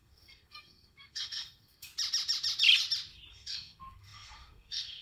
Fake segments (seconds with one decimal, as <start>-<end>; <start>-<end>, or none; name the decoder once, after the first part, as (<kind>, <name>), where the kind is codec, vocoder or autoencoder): 0.0-1.9 (codec, SNAC); 3.3-5.0